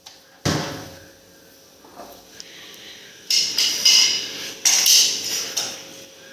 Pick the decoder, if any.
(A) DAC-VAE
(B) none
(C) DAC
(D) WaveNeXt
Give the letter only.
B